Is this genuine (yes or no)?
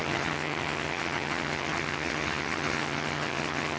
no